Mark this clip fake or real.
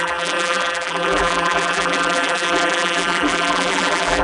fake